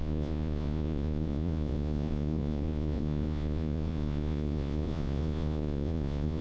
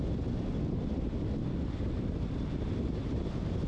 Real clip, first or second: second